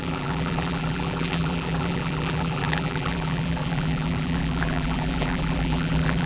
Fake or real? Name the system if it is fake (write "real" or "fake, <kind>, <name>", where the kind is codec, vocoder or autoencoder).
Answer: fake, vocoder, BigVGAN v2